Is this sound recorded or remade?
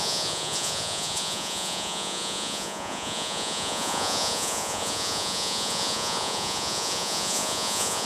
remade